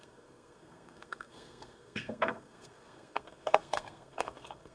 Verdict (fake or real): fake